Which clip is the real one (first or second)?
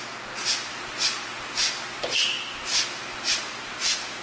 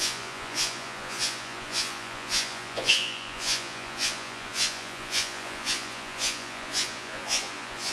first